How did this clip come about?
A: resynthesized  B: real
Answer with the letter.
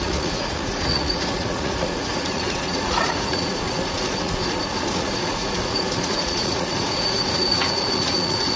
A